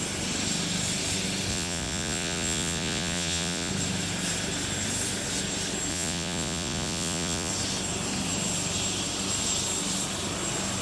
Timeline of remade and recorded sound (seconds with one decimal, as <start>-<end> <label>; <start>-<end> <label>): 0.0-1.5 recorded; 1.5-3.7 remade; 3.7-5.9 recorded; 5.9-7.5 remade; 7.5-10.8 recorded